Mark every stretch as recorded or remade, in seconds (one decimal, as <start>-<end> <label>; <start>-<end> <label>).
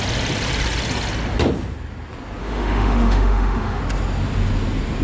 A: 0.0-2.4 recorded; 2.4-3.8 remade; 3.8-5.0 recorded